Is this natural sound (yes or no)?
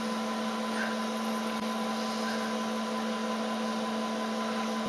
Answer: yes